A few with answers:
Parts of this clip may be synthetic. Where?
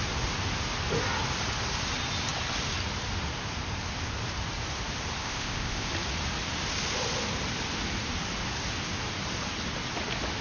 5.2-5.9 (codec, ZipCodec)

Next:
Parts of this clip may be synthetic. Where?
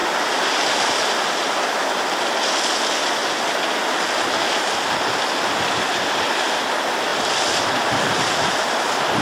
none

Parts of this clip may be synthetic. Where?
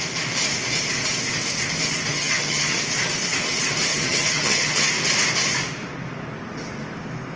2.1-2.8 (vocoder, HiFi-GAN); 3.9-4.9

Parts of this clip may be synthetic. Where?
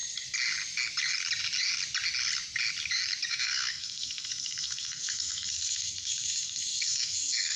3.3-7.6 (codec, SNAC)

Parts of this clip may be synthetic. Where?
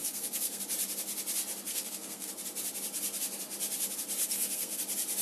0.0-0.6 (codec, SNAC); 1.7-2.3; 4.2-4.8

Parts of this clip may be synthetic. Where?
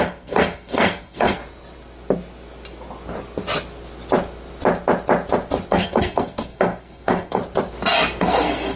0.0-1.4 (codec, SNAC); 5.7-7.4; 8.2-8.8